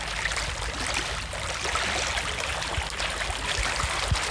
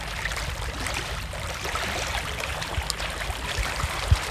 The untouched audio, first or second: first